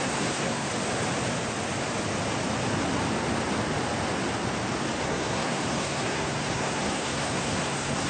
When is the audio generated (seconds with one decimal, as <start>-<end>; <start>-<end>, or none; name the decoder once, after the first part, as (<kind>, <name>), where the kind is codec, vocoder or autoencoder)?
0.0-0.7 (codec, SNAC); 5.0-8.1